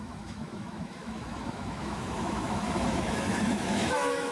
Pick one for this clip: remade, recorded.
remade